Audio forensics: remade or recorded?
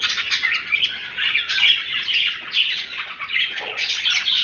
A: remade